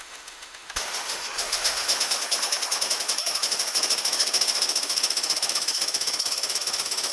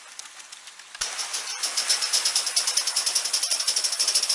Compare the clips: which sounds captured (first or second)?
second